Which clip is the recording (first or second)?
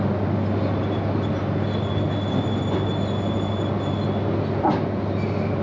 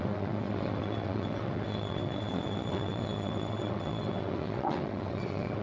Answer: first